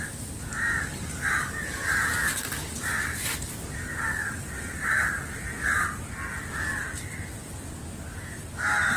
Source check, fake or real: real